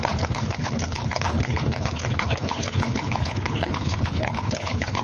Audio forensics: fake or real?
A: fake